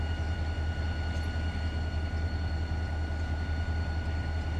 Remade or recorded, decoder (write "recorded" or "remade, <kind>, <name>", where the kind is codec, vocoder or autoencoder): recorded